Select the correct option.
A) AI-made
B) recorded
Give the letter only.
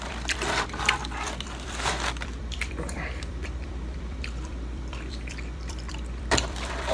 A